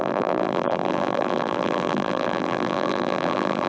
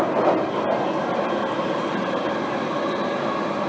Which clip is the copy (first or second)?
first